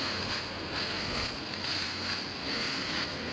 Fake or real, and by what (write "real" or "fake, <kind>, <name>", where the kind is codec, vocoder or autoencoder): fake, codec, SNAC